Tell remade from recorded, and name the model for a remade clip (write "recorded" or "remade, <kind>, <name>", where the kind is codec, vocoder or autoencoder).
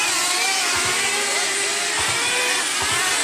recorded